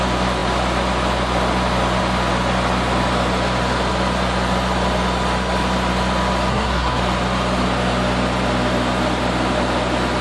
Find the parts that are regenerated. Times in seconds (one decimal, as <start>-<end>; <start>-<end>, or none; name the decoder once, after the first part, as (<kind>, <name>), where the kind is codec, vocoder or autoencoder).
6.5-7.0 (codec, SNAC)